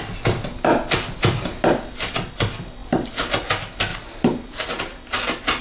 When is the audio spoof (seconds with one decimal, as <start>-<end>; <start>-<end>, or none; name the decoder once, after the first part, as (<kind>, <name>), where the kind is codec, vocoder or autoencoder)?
3.9-4.8 (vocoder, BigVGAN v2)